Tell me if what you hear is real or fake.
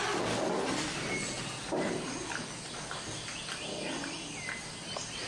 real